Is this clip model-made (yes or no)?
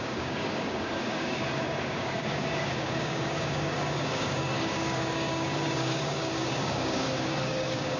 yes